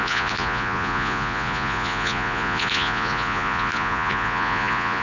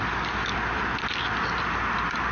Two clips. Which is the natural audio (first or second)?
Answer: second